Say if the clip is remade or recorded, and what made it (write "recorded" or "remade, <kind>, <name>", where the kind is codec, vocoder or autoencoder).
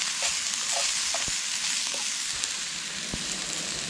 recorded